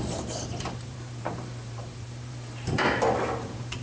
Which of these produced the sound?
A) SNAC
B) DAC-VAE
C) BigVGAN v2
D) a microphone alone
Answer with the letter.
C